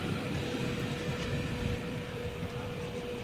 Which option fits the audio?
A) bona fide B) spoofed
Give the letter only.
B